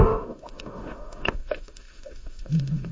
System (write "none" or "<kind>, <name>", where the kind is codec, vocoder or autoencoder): autoencoder, DAC-VAE